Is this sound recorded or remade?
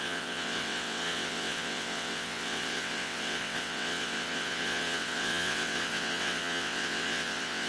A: remade